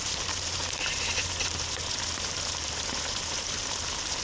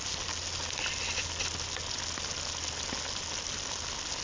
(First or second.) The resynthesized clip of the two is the first